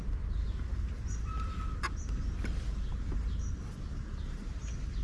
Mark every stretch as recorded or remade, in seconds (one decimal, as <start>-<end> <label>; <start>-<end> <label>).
0.0-5.0 recorded